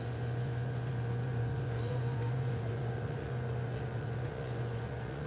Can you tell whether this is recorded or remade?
remade